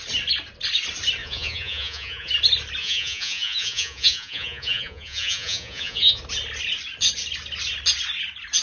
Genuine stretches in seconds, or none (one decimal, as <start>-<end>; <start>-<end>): 0.0-1.2; 2.3-2.8; 6.2-8.6

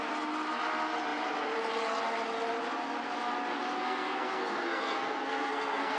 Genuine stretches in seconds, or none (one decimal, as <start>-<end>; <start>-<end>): 0.0-3.8